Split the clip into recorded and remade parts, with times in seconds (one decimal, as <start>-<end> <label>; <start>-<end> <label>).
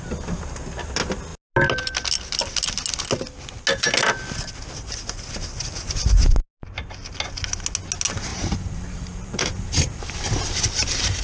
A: 0.0-8.3 recorded; 8.3-11.2 remade